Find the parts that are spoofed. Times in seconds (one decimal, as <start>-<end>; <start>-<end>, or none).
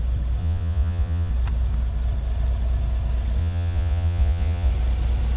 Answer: 0.4-1.3; 3.4-4.7